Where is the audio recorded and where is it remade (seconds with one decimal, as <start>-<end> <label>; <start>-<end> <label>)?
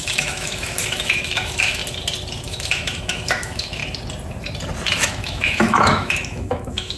0.0-1.8 remade; 1.8-2.4 recorded; 2.4-3.8 remade; 3.8-5.0 recorded; 5.0-7.0 remade